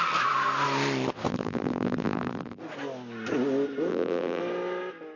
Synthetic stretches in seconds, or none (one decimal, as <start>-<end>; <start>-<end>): 1.3-2.6; 3.9-4.4